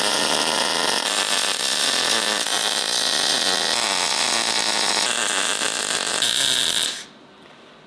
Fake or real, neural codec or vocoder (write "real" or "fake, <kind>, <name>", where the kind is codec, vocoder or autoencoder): real